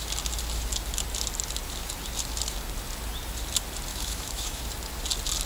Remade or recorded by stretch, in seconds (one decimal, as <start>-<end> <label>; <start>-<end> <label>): 0.0-3.9 recorded; 3.9-4.6 remade; 4.6-5.5 recorded